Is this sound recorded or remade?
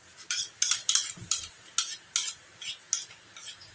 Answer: recorded